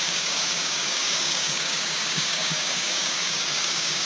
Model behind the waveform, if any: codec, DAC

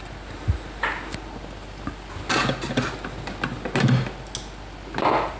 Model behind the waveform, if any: none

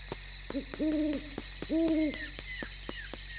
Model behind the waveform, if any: none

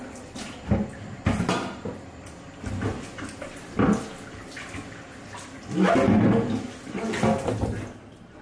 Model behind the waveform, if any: none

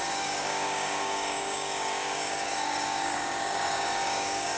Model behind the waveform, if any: codec, DAC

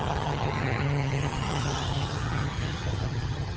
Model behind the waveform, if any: vocoder, HiFi-GAN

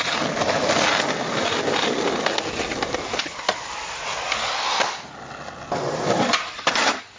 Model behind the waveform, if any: none